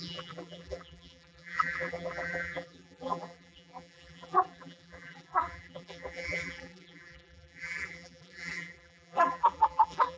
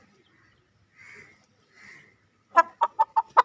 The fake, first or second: first